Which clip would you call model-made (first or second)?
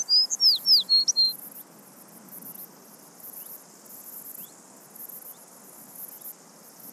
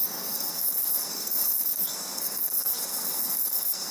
second